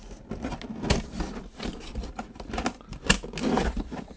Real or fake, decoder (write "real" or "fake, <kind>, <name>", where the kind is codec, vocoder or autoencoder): real